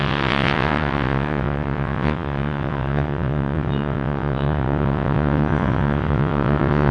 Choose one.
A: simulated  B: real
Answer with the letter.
A